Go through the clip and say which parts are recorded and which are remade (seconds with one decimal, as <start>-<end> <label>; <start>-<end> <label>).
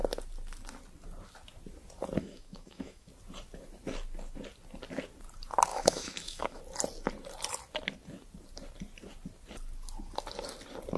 0.0-2.2 recorded; 2.2-3.1 remade; 3.1-5.7 recorded; 5.7-6.6 remade; 6.6-11.0 recorded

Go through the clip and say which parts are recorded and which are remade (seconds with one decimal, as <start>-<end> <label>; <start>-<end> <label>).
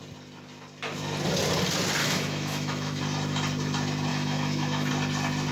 0.0-2.0 recorded; 2.0-3.0 remade; 3.0-4.1 recorded; 4.1-4.9 remade; 4.9-5.5 recorded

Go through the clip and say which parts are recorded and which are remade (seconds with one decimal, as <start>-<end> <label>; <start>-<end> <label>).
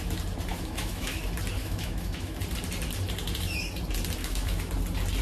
0.0-0.5 recorded; 0.5-1.2 remade; 1.2-1.6 recorded; 1.6-2.4 remade; 2.4-4.2 recorded; 4.2-4.7 remade; 4.7-5.2 recorded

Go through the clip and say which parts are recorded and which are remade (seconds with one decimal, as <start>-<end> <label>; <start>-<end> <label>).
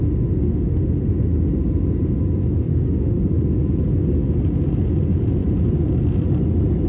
0.0-0.4 recorded; 0.4-0.9 remade; 0.9-2.7 recorded; 2.7-3.2 remade; 3.2-6.9 recorded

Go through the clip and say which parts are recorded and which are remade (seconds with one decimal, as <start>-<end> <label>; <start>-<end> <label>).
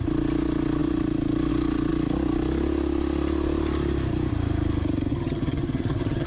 0.0-5.1 recorded; 5.1-6.3 remade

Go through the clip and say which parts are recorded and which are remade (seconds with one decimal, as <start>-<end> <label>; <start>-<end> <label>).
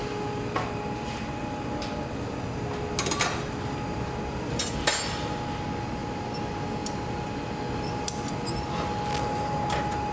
0.0-10.1 recorded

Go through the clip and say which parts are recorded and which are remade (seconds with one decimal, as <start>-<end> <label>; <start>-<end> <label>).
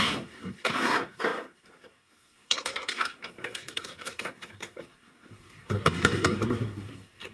0.0-7.3 remade